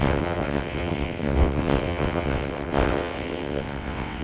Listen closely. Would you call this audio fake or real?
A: fake